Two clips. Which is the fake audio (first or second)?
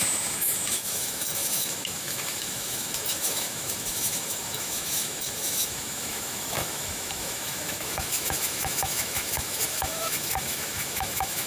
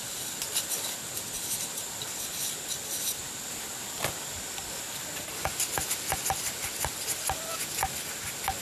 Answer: first